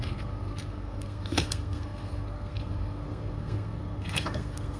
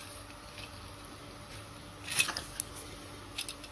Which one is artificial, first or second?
first